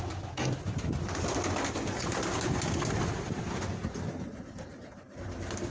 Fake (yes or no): no